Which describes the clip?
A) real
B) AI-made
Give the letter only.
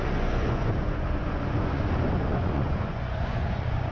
B